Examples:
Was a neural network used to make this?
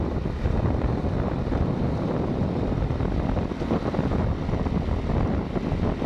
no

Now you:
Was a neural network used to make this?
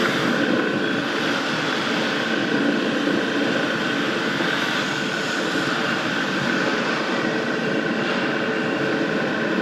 no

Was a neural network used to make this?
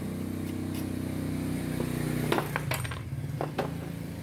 no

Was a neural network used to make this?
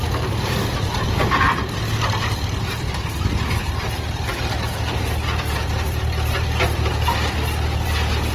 yes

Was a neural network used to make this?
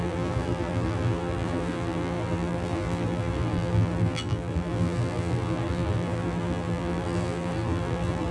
yes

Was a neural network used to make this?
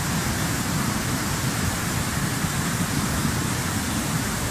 no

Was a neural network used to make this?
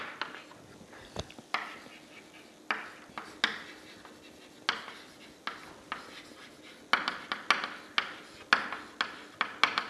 no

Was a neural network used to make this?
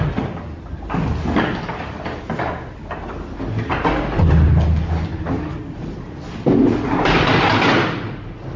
no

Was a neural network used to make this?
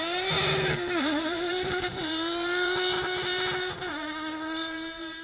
yes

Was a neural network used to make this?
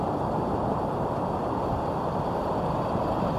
yes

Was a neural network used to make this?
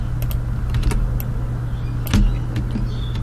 no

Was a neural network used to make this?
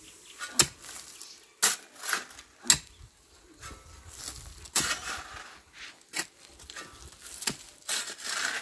no